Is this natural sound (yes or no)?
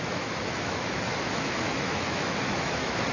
no